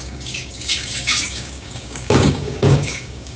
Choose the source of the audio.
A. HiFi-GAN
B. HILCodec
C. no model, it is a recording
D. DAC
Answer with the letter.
D